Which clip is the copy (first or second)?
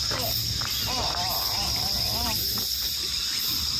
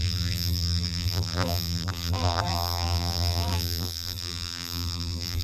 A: second